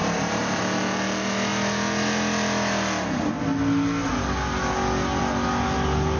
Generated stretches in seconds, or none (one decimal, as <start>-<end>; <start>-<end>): 0.0-0.6

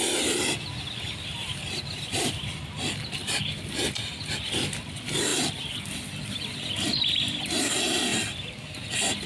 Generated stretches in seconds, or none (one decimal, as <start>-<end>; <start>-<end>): 3.2-3.7

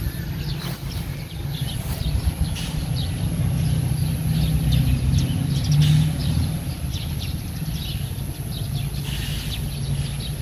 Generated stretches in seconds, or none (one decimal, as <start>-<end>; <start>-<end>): 6.2-7.5

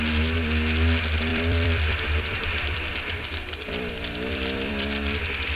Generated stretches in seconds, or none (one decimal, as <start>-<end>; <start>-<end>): 1.3-4.7

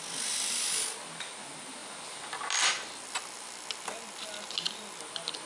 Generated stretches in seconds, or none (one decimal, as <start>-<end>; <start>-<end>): none

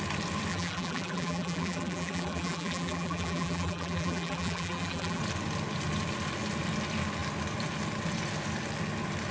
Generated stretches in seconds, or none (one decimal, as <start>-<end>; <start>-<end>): 0.5-5.2

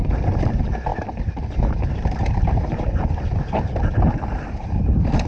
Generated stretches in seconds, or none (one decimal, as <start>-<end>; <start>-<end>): 0.0-5.3